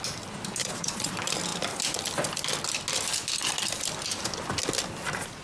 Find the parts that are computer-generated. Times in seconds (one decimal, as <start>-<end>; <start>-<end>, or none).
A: 0.6-1.1